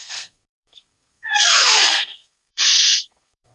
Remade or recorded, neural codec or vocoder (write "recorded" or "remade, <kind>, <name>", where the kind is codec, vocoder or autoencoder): remade, codec, SNAC